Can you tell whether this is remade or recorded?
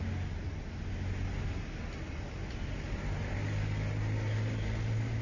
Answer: recorded